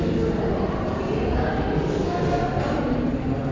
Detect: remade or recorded recorded